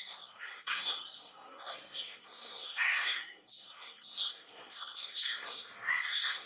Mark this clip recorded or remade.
remade